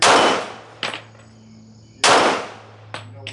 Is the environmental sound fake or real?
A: real